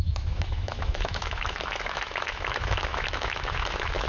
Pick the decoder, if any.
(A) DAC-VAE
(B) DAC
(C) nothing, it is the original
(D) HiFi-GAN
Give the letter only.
A